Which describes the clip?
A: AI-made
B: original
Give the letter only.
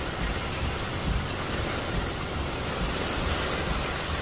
B